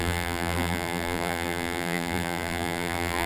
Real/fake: fake